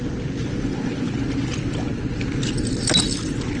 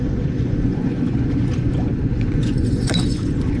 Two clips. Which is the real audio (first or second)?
first